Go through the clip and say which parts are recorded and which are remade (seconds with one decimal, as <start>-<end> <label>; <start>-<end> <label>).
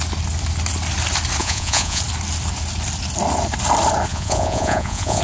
0.0-1.4 recorded; 1.4-2.0 remade; 2.0-4.1 recorded; 4.1-5.2 remade